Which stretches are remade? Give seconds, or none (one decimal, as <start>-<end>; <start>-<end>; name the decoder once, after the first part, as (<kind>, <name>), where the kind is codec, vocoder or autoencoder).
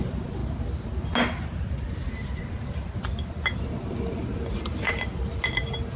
0.0-0.4 (vocoder, BigVGAN v2); 3.3-6.0